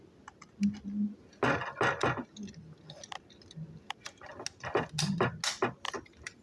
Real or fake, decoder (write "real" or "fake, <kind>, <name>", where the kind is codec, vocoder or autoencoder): real